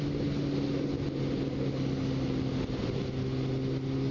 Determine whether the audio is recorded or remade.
recorded